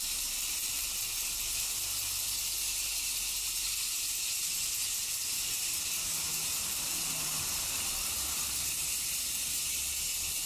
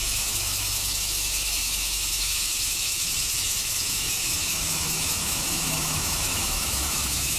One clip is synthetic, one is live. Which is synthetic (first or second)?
second